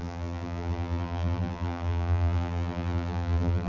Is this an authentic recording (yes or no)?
no